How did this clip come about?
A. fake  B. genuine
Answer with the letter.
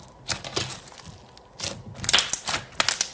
B